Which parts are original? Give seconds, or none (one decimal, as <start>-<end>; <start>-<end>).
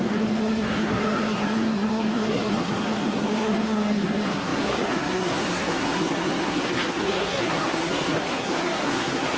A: none